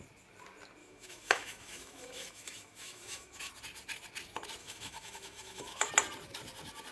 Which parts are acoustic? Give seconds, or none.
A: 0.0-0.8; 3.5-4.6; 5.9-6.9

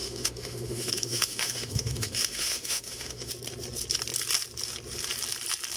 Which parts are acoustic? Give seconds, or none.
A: 3.3-5.8

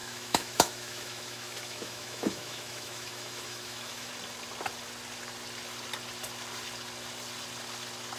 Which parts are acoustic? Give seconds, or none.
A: 4.1-8.2